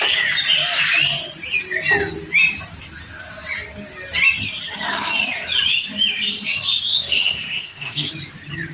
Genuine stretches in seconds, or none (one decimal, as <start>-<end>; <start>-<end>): 0.0-6.9; 8.1-8.7